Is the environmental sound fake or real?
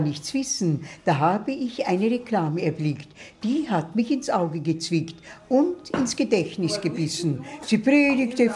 real